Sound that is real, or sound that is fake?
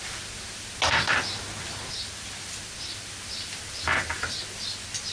real